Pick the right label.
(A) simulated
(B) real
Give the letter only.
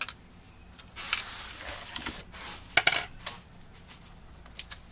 B